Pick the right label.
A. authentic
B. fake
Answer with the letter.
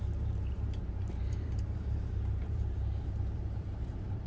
B